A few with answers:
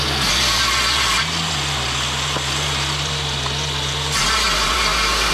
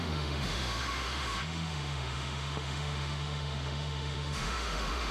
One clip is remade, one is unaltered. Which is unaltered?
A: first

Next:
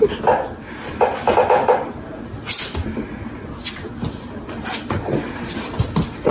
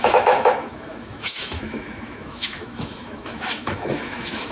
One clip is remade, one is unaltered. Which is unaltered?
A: first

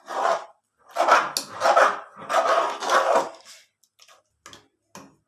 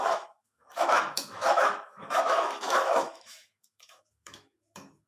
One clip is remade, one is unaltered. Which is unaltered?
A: first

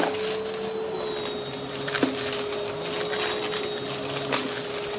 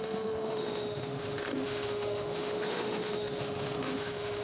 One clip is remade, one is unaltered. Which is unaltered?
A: first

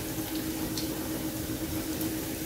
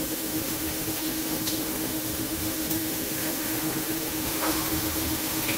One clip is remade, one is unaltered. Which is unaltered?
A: first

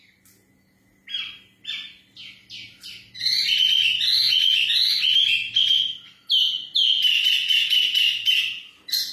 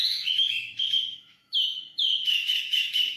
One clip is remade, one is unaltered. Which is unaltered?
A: first